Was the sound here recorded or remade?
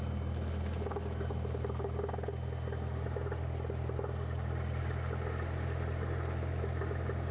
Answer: recorded